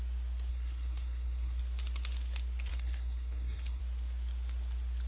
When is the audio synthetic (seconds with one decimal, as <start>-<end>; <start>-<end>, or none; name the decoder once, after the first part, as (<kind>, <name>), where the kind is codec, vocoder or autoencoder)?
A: 0.5-1.6 (codec, SNAC); 2.7-3.8